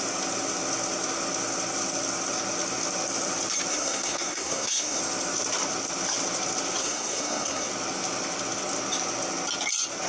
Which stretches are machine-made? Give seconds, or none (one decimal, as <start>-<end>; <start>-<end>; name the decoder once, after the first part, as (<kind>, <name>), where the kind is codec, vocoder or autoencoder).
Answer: 3.7-5.0 (codec, SNAC); 6.8-7.7